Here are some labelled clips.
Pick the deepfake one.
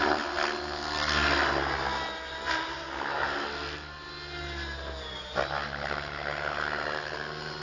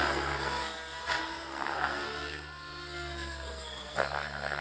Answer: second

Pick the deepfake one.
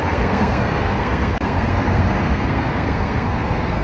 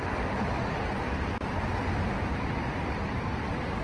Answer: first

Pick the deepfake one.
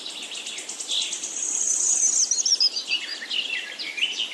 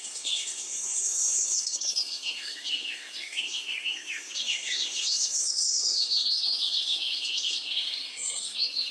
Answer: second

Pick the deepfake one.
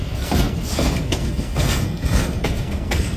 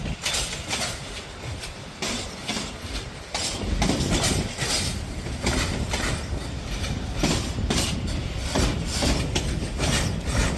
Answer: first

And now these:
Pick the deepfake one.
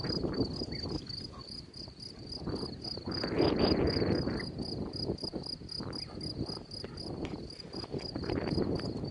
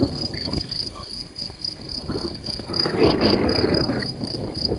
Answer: second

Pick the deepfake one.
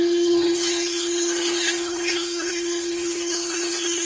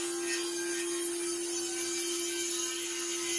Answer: first